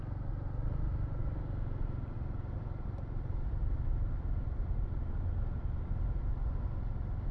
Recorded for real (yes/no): no